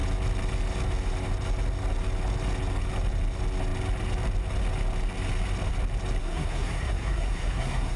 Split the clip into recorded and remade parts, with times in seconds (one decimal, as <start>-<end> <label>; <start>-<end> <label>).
0.0-6.2 recorded; 6.2-8.0 remade